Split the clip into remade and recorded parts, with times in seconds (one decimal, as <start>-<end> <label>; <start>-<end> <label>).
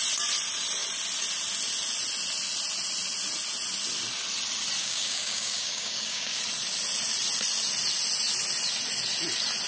0.0-4.8 recorded; 4.8-6.4 remade; 6.4-9.7 recorded